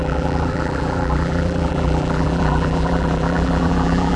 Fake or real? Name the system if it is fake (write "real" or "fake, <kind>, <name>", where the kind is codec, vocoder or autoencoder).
fake, vocoder, BigVGAN v2